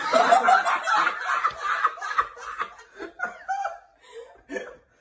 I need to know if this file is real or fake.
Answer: real